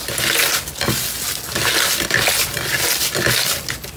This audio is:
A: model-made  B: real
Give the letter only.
B